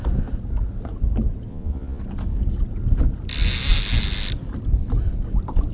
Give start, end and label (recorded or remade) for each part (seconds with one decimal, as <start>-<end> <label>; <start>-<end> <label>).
0.0-1.5 recorded; 1.5-2.0 remade; 2.0-5.7 recorded